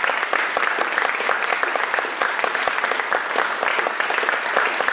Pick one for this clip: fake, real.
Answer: real